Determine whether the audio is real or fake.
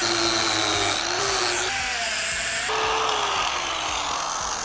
real